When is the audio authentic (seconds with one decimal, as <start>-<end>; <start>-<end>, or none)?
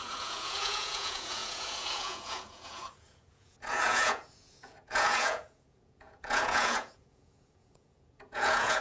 none